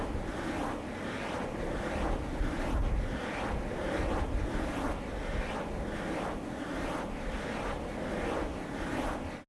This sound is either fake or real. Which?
real